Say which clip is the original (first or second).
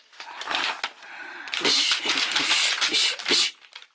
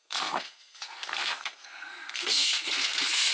first